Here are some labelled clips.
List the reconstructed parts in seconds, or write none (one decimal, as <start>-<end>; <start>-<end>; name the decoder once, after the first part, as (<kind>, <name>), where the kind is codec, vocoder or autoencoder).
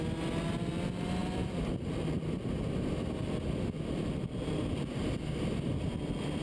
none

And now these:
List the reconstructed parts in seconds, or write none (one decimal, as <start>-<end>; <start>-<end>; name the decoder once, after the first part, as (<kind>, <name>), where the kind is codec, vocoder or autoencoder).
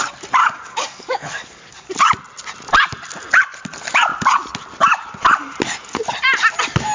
0.4-1.9 (codec, DAC)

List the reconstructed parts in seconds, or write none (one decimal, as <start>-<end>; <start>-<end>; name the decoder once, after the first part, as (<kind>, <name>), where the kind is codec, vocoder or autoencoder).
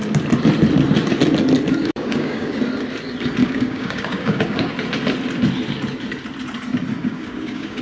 1.8-2.6 (codec, DAC); 3.4-4.7; 7.0-7.8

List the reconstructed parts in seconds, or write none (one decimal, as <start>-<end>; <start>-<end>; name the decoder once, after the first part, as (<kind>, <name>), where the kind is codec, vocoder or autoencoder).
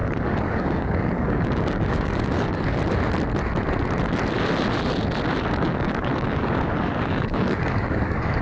0.0-2.8 (codec, DAC); 5.5-8.4